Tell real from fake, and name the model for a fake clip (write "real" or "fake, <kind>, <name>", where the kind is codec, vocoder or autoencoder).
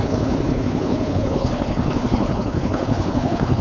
fake, codec, HILCodec